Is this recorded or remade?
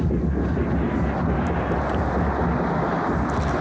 recorded